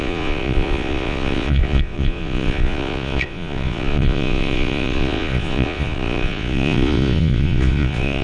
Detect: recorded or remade remade